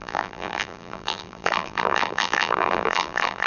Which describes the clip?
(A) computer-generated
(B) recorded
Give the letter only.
A